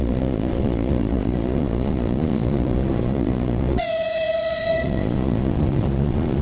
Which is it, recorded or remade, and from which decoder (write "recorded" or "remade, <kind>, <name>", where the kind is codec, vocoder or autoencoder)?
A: remade, vocoder, Vocos